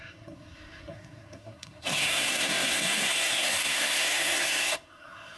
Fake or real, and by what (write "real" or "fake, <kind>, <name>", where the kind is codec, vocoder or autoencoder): fake, codec, SNAC